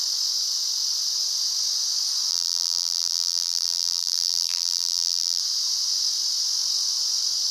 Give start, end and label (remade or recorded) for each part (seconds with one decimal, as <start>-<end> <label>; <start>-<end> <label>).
0.0-2.3 recorded; 2.3-5.4 remade; 5.4-7.5 recorded